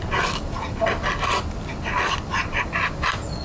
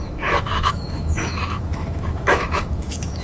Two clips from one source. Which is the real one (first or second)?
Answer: first